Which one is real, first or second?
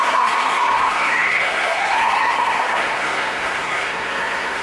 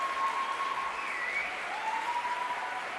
second